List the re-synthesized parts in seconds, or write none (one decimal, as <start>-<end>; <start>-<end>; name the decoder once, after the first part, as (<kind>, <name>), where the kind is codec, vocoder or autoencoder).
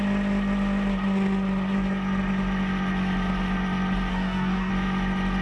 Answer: 4.1-4.7 (codec, DAC)